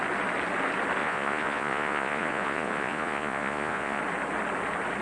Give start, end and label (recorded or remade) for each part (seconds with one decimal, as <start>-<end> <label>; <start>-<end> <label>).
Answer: 0.0-1.0 recorded; 1.0-4.0 remade; 4.0-5.0 recorded